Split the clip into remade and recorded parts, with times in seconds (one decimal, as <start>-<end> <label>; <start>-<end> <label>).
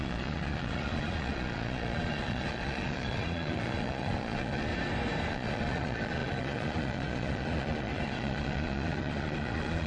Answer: 0.0-4.7 remade; 4.7-5.3 recorded; 5.3-9.9 remade